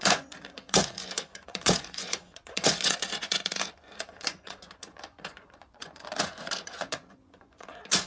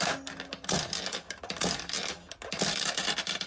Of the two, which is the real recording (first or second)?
second